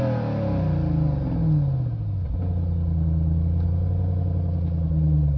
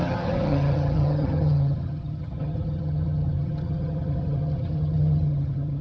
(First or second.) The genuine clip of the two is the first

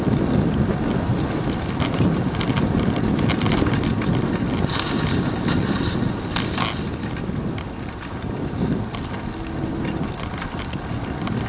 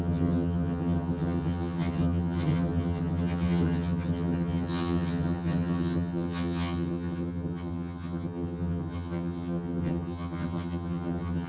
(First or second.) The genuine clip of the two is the first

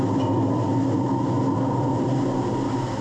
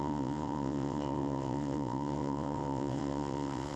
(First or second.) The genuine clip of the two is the first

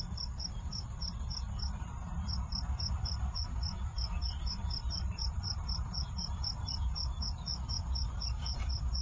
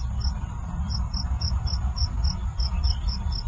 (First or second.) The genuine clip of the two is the second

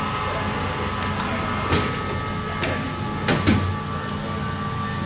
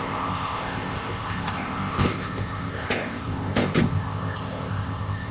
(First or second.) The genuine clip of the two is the first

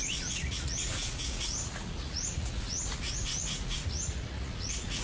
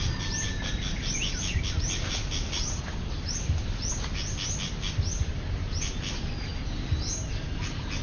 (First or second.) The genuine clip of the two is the second